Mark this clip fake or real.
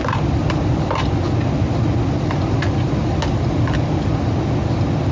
real